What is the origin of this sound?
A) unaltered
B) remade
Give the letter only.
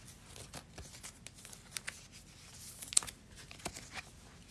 A